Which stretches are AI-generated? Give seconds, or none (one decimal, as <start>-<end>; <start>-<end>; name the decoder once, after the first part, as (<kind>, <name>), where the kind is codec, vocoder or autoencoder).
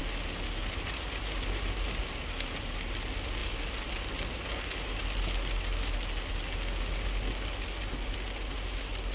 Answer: none